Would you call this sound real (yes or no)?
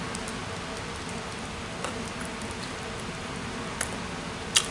yes